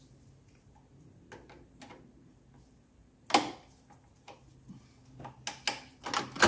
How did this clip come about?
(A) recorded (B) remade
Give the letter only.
A